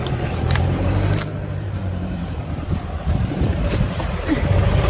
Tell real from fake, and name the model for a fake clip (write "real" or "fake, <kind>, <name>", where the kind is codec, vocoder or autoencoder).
fake, vocoder, BigVGAN v2